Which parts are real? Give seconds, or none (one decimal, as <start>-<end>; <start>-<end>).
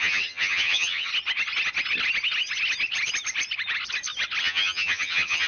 1.1-4.4